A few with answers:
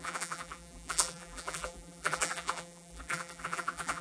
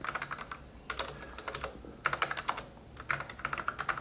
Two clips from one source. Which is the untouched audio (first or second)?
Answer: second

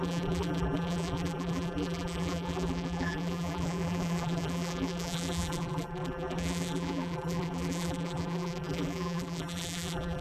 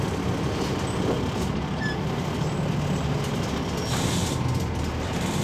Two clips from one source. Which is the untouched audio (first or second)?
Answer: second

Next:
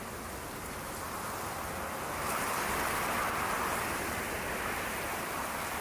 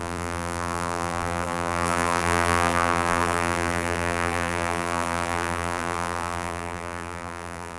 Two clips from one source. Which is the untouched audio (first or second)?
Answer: first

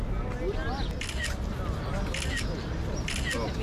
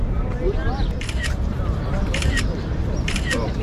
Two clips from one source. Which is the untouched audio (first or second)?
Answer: first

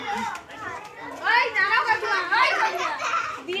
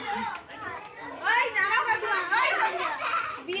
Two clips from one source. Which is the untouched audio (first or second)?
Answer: first